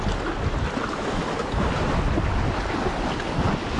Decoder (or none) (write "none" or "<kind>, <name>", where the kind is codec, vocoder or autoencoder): none